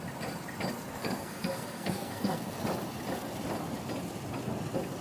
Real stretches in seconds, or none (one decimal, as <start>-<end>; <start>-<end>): 0.0-0.9; 2.6-5.0